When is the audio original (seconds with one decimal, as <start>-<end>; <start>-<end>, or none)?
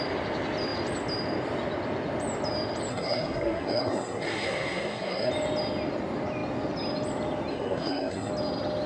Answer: 0.0-2.9; 5.3-7.5; 8.3-8.9